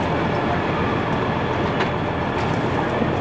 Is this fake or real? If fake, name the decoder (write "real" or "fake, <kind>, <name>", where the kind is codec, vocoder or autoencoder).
real